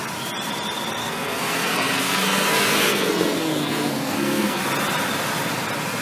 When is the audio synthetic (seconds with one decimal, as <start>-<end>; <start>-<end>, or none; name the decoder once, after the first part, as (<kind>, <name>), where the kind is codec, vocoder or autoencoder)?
1.0-4.6 (codec, SNAC)